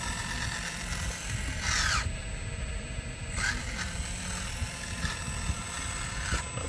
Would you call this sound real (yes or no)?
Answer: yes